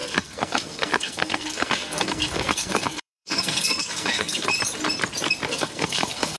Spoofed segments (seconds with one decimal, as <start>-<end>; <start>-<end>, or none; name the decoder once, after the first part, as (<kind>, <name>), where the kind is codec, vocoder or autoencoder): 0.0-4.5 (codec, SNAC); 5.5-6.4

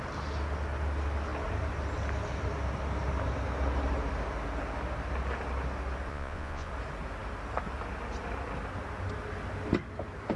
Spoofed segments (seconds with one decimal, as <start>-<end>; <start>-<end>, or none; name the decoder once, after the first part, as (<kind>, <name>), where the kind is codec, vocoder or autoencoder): 6.1-6.7 (vocoder, Vocos)

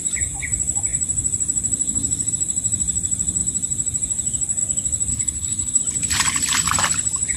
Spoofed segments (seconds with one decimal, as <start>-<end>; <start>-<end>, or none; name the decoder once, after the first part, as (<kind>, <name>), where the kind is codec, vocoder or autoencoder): 5.1-5.8 (codec, HILCodec)

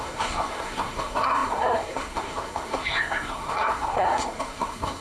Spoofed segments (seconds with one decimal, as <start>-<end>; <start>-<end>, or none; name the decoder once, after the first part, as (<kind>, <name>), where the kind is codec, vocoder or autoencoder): 0.0-5.0 (codec, SNAC)

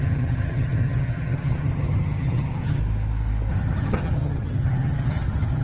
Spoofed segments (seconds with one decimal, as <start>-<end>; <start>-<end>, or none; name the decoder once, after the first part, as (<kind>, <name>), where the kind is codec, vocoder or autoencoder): 0.0-2.8 (vocoder, HiFi-GAN); 3.5-5.6

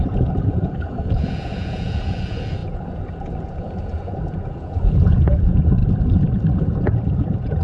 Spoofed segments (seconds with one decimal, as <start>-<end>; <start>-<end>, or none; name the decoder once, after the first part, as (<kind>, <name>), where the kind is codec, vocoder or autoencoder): 0.0-5.8 (vocoder, Vocos); 6.6-7.6